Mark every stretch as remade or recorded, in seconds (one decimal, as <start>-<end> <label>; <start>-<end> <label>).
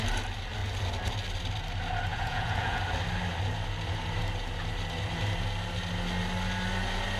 0.0-2.1 recorded; 2.1-2.8 remade; 2.8-7.2 recorded